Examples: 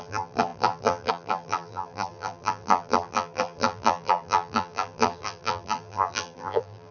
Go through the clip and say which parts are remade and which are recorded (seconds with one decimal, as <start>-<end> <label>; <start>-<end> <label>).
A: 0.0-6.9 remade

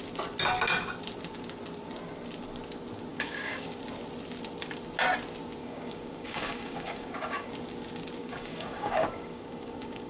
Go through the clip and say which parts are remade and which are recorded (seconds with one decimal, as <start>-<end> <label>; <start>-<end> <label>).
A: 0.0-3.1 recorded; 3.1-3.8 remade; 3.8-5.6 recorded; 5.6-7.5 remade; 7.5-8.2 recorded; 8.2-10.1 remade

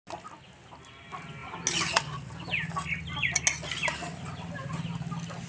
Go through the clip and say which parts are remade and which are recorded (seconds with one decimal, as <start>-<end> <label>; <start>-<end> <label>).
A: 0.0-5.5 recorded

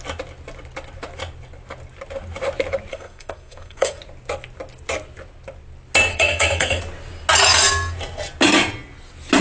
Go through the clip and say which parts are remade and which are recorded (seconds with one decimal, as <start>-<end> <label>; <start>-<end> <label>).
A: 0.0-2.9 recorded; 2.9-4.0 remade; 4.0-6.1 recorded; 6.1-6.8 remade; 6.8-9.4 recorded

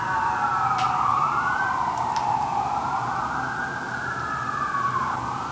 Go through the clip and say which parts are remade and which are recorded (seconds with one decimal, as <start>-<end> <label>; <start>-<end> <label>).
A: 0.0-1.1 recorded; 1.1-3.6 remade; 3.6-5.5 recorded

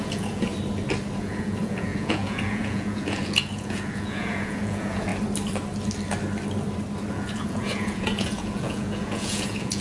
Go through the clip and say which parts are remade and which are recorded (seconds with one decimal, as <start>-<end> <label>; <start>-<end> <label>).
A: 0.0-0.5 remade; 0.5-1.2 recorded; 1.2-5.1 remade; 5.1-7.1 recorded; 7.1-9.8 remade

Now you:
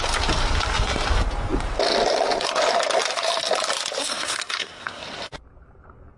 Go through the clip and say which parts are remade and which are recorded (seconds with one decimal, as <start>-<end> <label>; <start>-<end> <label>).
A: 0.0-4.0 recorded; 4.0-5.0 remade; 5.0-6.2 recorded

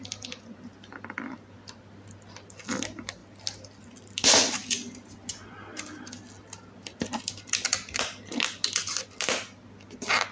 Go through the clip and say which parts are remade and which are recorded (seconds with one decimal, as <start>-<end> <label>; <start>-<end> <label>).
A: 0.0-10.3 recorded